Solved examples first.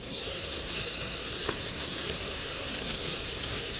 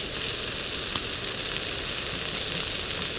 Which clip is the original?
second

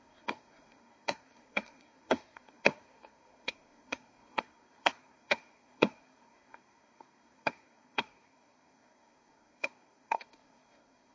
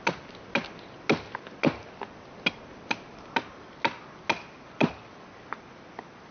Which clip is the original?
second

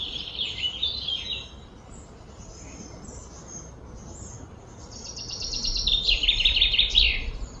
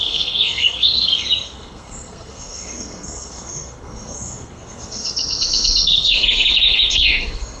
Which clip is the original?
first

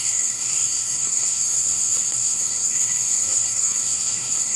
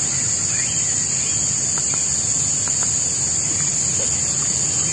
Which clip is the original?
second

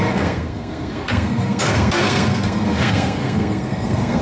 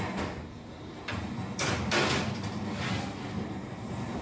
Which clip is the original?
second